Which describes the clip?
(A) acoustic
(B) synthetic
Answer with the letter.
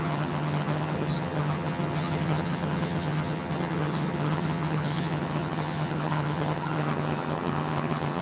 B